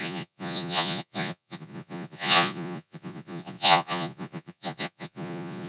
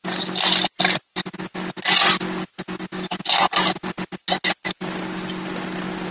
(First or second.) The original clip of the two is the second